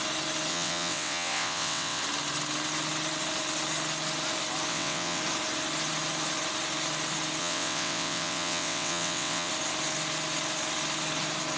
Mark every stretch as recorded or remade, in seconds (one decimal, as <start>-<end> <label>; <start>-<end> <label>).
0.0-0.5 recorded; 0.5-2.0 remade; 2.0-4.7 recorded; 4.7-5.2 remade; 5.2-7.4 recorded; 7.4-9.5 remade; 9.5-11.6 recorded